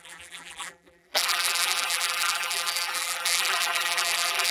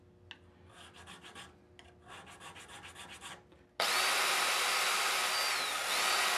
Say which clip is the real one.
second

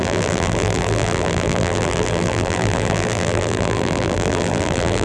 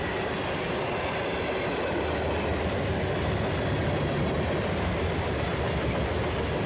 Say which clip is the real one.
second